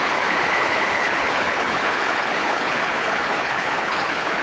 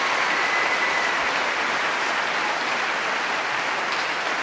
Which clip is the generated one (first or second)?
first